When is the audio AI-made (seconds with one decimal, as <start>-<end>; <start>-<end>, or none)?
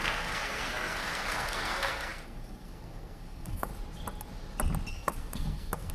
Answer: 0.0-3.7; 4.9-5.9